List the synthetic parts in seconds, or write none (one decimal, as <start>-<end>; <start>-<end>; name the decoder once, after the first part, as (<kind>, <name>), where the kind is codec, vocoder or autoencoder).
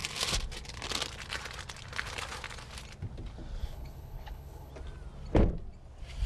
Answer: 3.6-4.7 (codec, HILCodec)